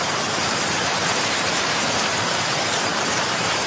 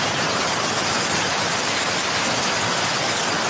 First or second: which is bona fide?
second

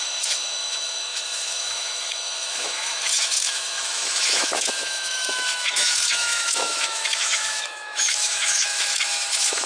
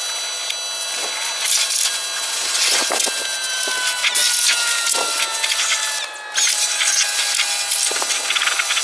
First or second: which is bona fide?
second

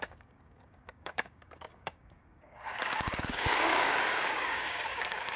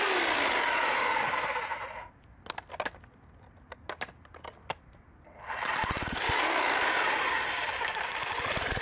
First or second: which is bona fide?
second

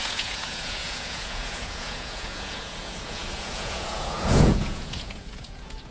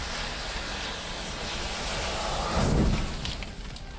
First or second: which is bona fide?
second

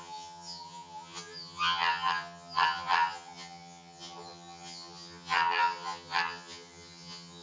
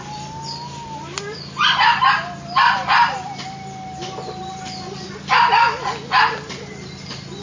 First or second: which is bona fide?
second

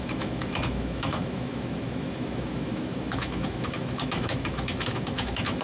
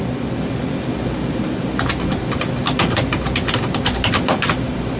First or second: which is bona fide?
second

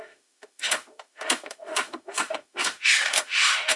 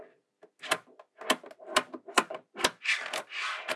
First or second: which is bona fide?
second